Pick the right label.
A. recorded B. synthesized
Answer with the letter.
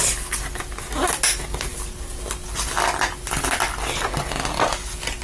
A